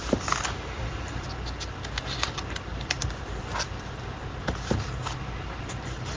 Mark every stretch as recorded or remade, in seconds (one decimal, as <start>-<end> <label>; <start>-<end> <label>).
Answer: 0.0-6.2 recorded